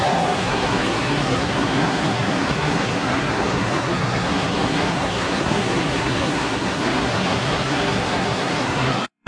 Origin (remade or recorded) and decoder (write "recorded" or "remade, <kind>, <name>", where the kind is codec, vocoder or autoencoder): remade, codec, SNAC